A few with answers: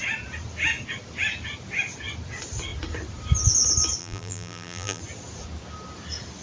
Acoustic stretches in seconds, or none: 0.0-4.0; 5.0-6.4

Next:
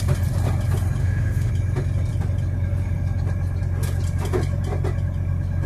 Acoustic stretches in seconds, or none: 0.0-1.0; 1.5-5.7

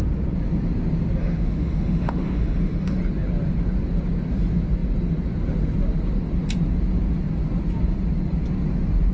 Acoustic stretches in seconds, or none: 0.0-1.2; 3.0-9.1

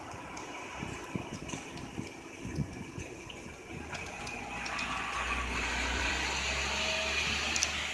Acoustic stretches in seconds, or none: 0.0-2.5; 6.1-7.9

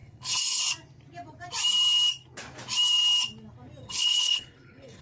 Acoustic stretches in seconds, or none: 0.6-3.8

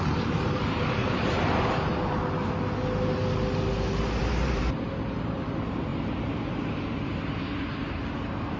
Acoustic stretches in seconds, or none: 1.9-4.2

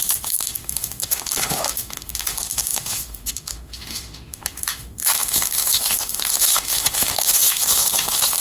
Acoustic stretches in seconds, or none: none